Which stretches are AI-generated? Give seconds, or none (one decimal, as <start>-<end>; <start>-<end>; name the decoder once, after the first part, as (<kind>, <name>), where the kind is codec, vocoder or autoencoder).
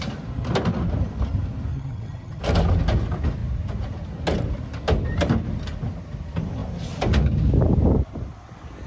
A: 1.7-2.4 (vocoder, HiFi-GAN)